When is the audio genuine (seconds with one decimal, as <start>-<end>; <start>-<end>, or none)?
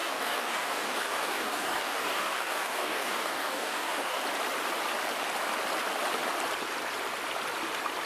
4.2-8.1